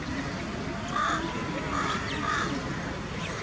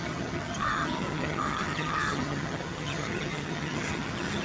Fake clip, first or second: second